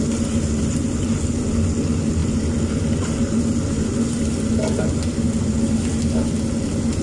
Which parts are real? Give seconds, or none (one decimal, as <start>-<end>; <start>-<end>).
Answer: 0.0-7.0